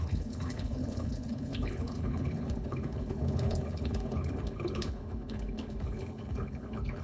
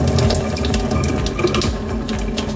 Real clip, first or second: second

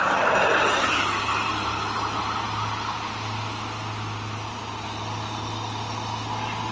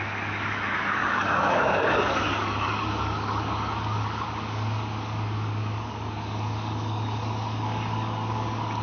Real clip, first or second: first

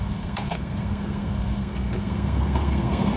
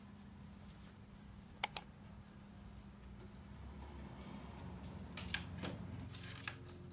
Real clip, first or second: second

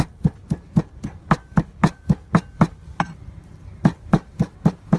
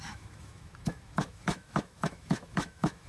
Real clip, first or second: first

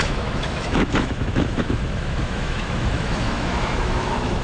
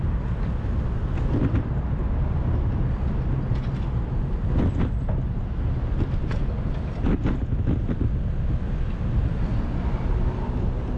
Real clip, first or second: second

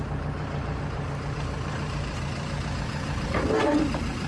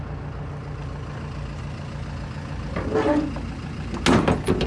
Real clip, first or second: second